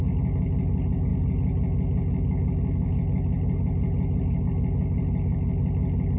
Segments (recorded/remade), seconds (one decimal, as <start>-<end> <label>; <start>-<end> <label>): 0.0-6.2 recorded